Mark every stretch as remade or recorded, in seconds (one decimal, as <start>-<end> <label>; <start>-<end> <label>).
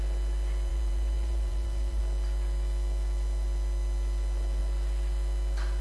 0.0-0.7 recorded; 0.7-2.0 remade; 2.0-5.8 recorded